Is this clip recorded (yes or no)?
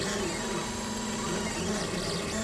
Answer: yes